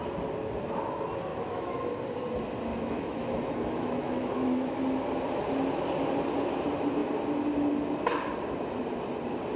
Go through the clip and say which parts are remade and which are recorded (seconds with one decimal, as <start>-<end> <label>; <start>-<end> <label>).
0.0-1.3 recorded; 1.3-1.9 remade; 1.9-2.7 recorded; 2.7-4.8 remade; 4.8-9.6 recorded